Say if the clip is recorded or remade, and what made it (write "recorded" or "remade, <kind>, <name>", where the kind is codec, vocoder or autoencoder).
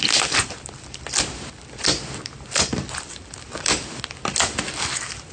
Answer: recorded